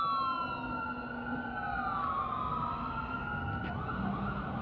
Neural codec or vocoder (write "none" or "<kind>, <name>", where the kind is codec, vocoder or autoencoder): none